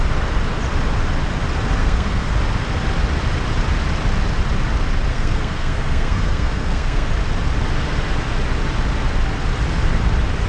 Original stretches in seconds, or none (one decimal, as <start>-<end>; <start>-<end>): 0.0-1.8; 2.3-5.1; 7.1-10.5